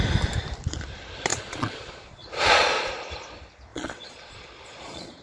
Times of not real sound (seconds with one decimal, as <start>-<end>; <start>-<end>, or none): 1.3-2.9; 3.7-5.2